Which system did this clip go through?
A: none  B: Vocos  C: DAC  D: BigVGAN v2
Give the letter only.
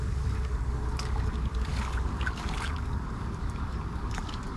C